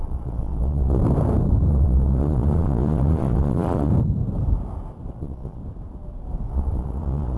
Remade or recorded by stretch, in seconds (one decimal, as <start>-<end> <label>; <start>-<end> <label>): 0.0-1.0 remade; 1.0-1.7 recorded; 1.7-3.9 remade; 3.9-5.1 recorded; 5.1-5.6 remade; 5.6-6.5 recorded; 6.5-7.4 remade